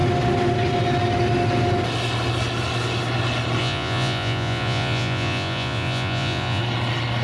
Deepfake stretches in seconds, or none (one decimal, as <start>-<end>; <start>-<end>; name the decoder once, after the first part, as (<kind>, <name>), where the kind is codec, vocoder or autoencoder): 3.6-6.6 (vocoder, Vocos)